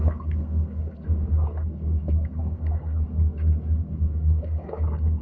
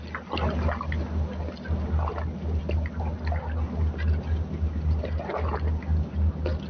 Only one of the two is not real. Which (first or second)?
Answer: first